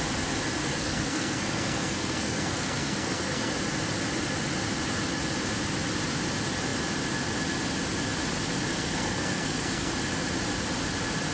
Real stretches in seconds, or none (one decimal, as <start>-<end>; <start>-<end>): 0.0-0.6; 3.5-8.7; 9.9-11.3